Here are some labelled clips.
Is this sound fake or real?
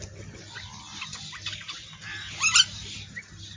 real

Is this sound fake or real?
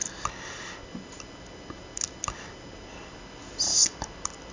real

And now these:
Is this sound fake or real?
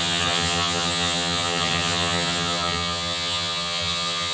fake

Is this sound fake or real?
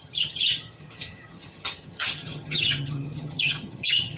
fake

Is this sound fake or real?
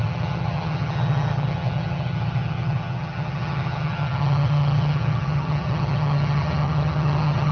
fake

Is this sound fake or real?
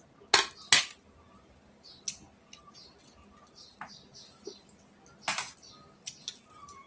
real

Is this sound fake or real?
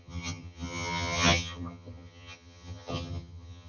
fake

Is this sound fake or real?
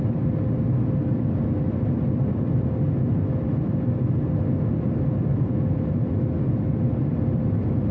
real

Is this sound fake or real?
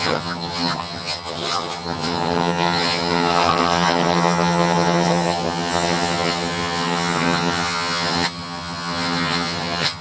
fake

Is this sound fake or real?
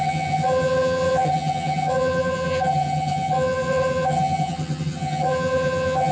fake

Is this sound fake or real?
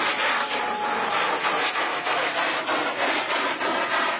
real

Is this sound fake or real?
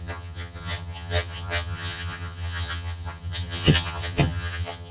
fake